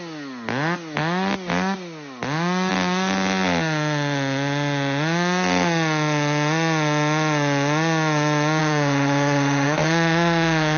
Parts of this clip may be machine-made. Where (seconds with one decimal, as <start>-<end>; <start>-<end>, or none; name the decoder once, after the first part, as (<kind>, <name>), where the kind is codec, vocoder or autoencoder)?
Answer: 8.6-10.8 (autoencoder, DAC-VAE)